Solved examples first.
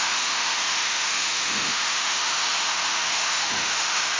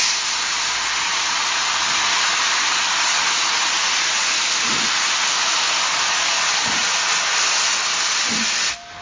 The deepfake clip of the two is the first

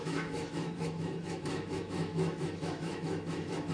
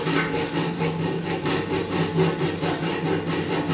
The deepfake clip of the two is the first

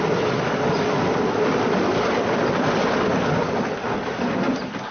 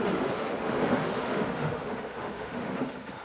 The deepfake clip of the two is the second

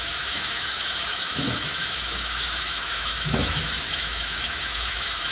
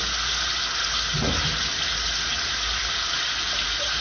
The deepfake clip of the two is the first